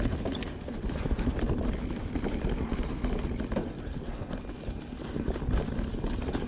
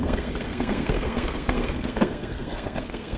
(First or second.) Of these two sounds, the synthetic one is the second